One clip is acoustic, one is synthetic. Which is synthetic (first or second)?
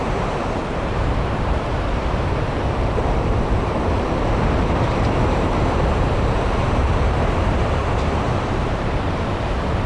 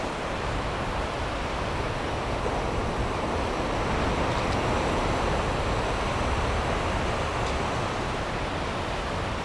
first